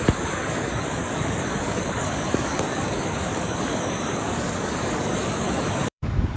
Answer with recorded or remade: remade